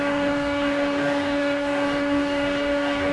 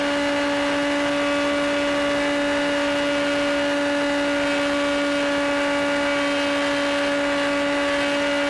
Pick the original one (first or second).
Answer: second